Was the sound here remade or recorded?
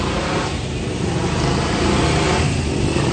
recorded